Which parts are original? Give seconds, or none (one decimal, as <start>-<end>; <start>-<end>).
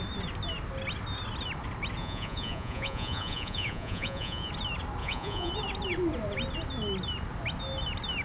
0.0-2.0; 4.5-5.0; 5.5-8.2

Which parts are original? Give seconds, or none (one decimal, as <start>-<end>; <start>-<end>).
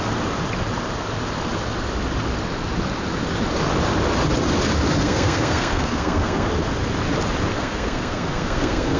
0.0-5.0; 6.5-7.5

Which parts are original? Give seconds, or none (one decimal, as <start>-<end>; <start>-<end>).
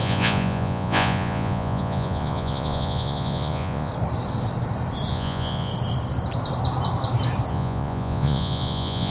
3.9-5.1; 5.7-7.5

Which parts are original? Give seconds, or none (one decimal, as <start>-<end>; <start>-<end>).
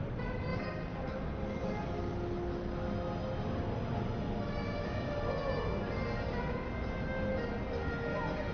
0.0-8.5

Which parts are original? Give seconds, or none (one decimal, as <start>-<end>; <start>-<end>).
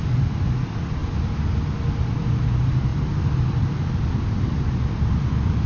1.0-2.0